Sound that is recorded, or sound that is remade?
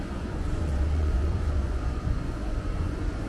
remade